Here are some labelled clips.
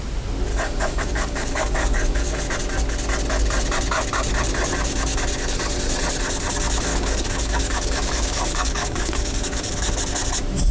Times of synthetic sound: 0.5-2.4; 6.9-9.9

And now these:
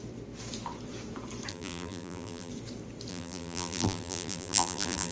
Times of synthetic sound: 1.5-2.5; 3.1-5.1

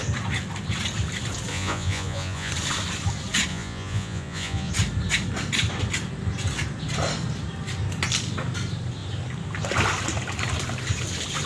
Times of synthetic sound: 1.5-2.5; 3.5-4.7

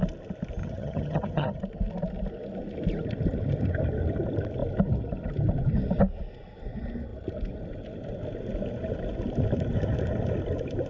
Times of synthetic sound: 0.6-1.6